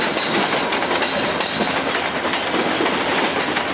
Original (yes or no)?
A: yes